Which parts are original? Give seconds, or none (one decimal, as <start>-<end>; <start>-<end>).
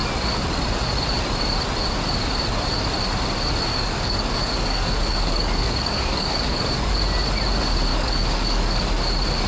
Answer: 0.0-3.7; 7.0-7.9; 8.8-9.5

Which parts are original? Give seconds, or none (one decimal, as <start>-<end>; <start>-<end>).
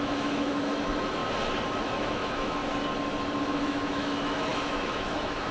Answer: 1.2-1.8; 2.6-3.4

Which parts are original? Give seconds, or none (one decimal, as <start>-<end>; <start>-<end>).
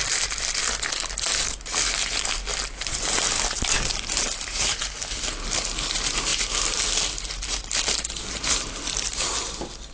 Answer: 0.0-9.9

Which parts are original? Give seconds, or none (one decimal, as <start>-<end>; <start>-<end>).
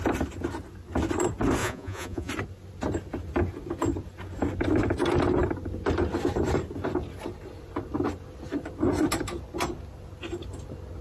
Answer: 0.0-1.6; 2.3-11.0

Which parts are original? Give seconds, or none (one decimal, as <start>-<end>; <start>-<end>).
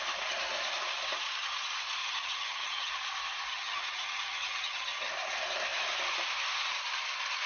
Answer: 0.0-2.0; 2.9-3.5; 5.1-7.5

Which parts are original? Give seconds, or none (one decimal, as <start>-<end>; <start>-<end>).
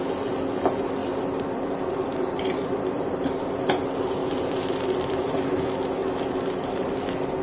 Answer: 0.0-1.0; 3.7-4.2; 5.2-6.0; 6.9-7.4